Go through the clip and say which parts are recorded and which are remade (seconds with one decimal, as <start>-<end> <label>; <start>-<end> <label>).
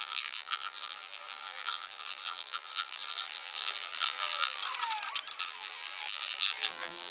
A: 0.0-4.6 remade; 4.6-5.4 recorded; 5.4-7.1 remade